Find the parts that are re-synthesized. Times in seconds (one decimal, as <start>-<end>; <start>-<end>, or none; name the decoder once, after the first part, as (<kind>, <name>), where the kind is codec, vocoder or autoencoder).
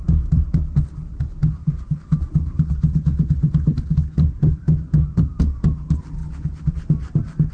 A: 0.0-0.8 (vocoder, BigVGAN v2); 1.6-5.4; 6.2-6.7